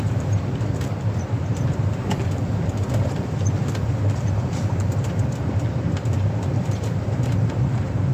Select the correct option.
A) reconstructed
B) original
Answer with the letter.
A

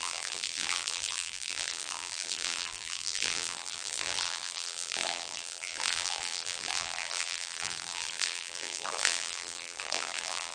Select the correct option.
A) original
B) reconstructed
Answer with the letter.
B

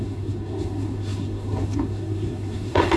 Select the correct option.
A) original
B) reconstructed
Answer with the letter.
B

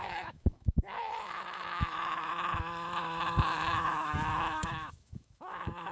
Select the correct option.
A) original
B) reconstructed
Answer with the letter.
B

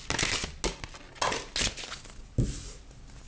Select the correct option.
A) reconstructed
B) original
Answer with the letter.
B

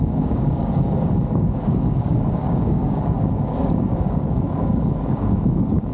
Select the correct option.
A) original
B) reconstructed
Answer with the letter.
B